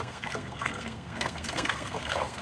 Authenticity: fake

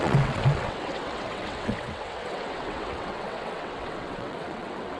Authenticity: fake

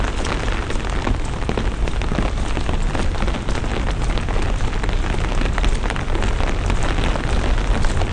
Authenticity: real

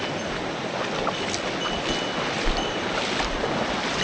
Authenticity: real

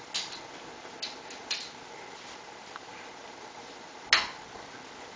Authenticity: real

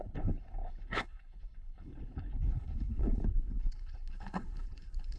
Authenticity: fake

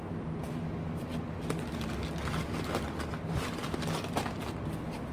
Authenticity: real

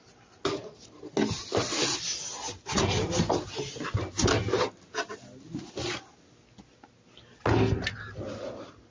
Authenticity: real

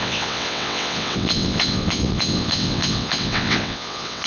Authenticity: fake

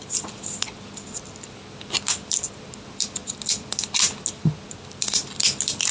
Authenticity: real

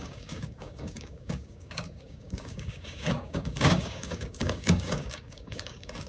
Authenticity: fake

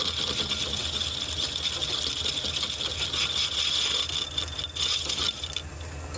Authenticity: real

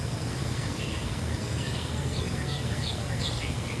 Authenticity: fake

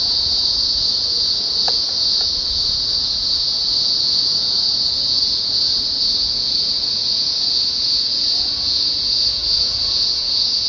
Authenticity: fake